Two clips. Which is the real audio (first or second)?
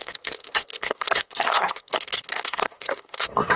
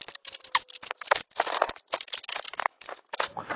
second